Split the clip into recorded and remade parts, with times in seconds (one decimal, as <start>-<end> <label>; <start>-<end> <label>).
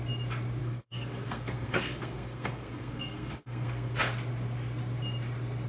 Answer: 0.0-0.6 recorded; 0.6-4.0 remade; 4.0-5.7 recorded